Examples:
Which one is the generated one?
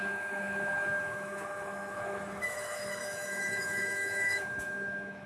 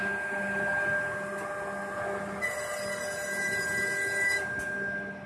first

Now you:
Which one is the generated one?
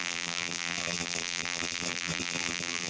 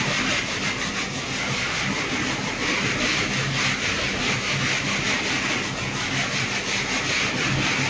first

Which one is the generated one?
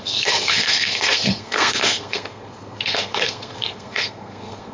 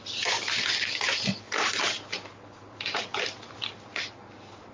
first